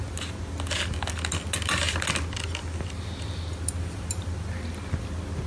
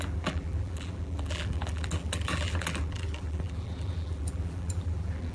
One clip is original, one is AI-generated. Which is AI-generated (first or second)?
second